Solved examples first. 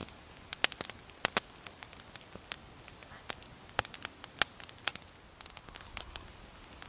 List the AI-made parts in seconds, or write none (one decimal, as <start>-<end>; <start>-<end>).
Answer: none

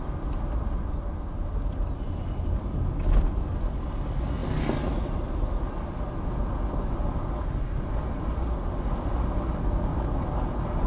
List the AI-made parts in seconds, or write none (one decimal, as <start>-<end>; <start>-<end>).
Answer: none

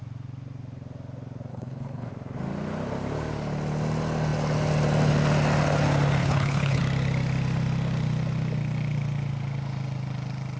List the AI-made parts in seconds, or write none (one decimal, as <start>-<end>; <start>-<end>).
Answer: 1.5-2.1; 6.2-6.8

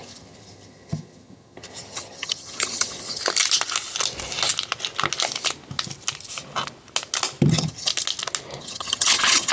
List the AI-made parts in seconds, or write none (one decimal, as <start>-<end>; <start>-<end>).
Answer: 0.0-3.2; 7.5-7.9; 8.6-9.5